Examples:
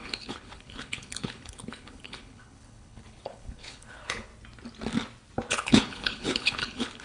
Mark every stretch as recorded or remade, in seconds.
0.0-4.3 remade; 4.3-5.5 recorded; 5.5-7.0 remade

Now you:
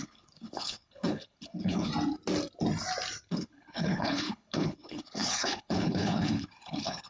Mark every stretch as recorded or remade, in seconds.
0.0-1.9 remade; 1.9-3.3 recorded; 3.3-7.1 remade

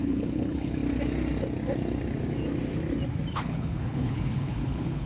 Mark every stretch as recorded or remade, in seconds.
0.0-0.8 remade; 0.8-3.3 recorded; 3.3-5.1 remade